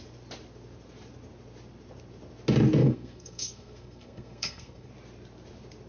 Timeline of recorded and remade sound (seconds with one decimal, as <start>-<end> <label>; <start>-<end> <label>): 0.0-2.8 recorded; 2.8-4.9 remade; 4.9-5.9 recorded